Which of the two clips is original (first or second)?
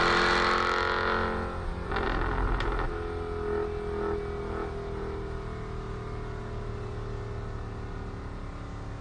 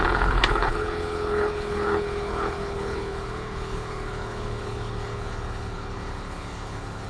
first